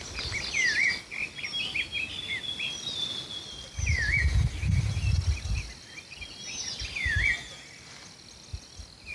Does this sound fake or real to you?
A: real